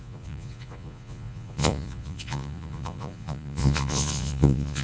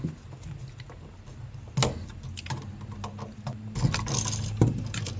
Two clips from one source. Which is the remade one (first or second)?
first